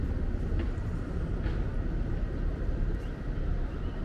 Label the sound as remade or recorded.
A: recorded